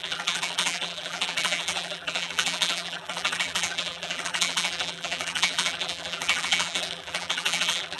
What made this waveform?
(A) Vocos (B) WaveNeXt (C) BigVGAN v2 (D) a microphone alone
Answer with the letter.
C